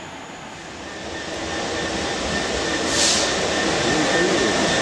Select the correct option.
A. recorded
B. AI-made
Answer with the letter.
A